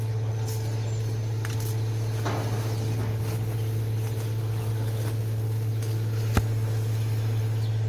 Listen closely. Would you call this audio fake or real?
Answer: real